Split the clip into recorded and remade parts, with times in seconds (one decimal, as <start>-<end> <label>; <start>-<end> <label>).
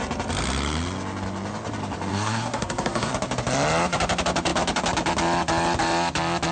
0.0-2.1 recorded; 2.1-3.1 remade; 3.1-6.5 recorded